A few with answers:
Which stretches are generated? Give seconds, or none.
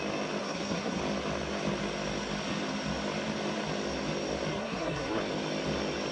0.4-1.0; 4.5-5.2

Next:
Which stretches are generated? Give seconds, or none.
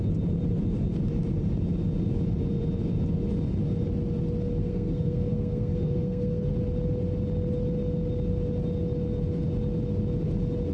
4.6-6.5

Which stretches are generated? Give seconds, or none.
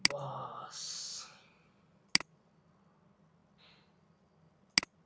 none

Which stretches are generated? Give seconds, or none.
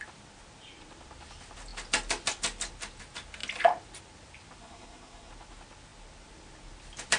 4.6-5.3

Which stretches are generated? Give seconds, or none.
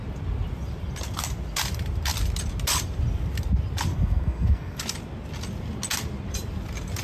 3.9-4.8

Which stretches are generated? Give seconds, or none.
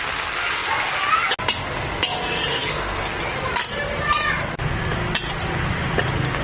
2.5-3.2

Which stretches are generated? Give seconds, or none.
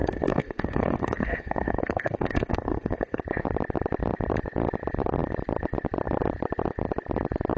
0.0-3.2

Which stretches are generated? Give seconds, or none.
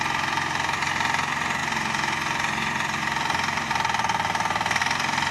none